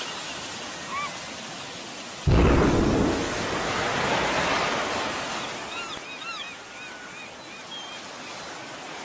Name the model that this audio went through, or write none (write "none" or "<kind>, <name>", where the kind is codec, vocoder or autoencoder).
none